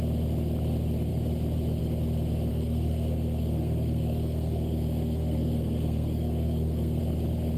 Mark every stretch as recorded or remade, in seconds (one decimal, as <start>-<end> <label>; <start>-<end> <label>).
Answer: 0.0-2.5 recorded; 2.5-7.0 remade; 7.0-7.6 recorded